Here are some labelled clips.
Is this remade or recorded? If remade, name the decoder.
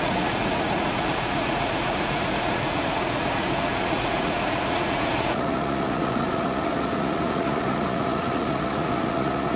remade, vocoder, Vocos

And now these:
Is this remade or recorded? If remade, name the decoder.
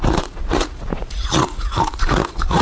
remade, vocoder, Vocos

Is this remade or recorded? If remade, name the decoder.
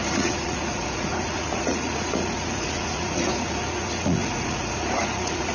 remade, vocoder, Vocos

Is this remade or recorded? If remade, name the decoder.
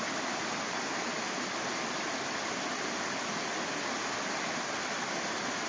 recorded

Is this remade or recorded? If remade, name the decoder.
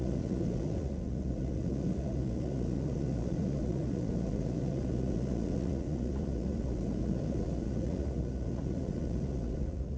remade, vocoder, Vocos